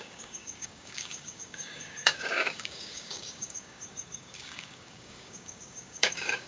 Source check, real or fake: fake